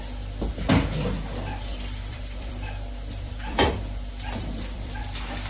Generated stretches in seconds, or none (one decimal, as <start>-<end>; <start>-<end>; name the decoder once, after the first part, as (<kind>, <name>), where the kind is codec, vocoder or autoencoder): 1.7-5.0 (vocoder, BigVGAN v2)